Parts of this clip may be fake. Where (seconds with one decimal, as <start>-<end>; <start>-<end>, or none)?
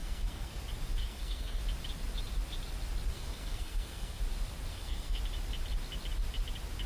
0.0-0.6; 1.0-1.6; 3.1-4.2; 4.7-5.2